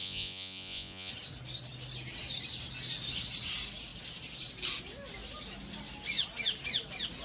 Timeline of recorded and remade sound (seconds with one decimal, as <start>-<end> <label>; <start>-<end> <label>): 0.0-1.1 remade; 1.1-7.2 recorded